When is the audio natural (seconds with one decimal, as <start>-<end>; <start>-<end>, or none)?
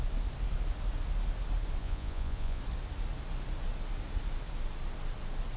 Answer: 0.0-1.8; 2.6-5.6